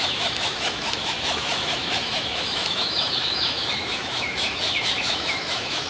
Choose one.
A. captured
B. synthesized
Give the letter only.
B